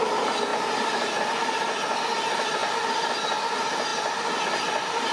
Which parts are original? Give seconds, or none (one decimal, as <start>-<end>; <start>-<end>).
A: 0.0-0.5; 1.2-5.1